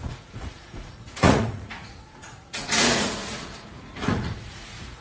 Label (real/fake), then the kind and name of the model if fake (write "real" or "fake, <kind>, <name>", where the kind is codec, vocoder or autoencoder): fake, vocoder, Vocos